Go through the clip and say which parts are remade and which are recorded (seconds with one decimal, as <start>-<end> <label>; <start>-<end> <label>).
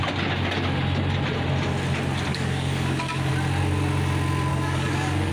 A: 0.0-2.3 recorded; 2.3-3.3 remade; 3.3-4.5 recorded; 4.5-5.3 remade